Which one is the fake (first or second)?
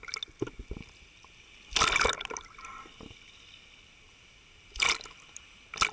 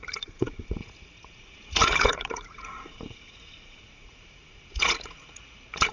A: second